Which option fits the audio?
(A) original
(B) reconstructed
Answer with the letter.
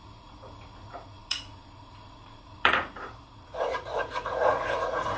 B